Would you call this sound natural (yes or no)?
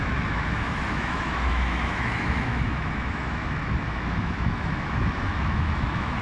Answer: no